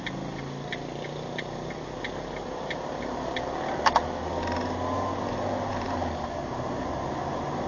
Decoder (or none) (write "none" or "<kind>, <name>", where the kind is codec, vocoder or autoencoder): none